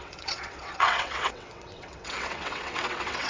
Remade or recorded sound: remade